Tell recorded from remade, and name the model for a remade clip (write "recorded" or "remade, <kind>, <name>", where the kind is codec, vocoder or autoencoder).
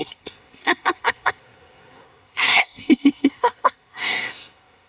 remade, codec, SNAC